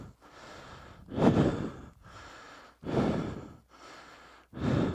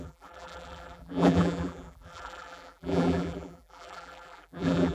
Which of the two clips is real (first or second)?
first